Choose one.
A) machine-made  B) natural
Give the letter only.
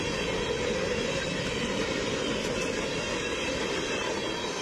B